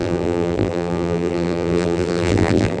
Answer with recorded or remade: remade